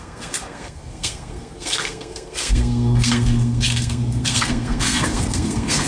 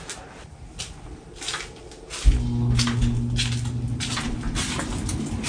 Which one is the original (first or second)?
second